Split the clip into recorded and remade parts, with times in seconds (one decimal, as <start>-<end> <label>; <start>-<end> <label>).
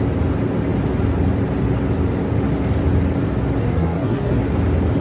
0.0-3.6 recorded; 3.6-4.4 remade; 4.4-5.0 recorded